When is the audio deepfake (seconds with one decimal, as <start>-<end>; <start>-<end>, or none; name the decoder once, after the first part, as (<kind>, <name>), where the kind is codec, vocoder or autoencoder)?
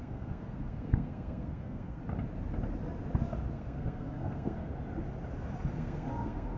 0.0-2.0 (codec, SNAC); 3.5-4.7; 5.7-6.6